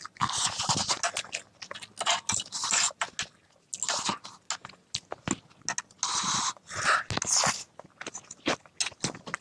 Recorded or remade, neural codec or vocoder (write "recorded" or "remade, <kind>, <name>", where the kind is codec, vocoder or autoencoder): recorded